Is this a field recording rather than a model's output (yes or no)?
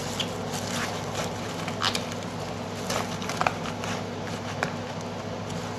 yes